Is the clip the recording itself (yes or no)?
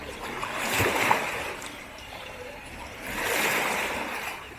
no